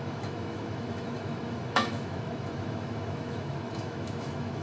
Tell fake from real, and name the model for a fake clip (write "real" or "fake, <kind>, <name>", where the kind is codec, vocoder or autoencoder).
fake, autoencoder, DAC-VAE